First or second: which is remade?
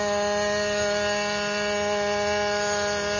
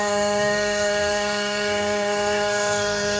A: second